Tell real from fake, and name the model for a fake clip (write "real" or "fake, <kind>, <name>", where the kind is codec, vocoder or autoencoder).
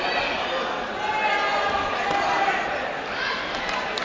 real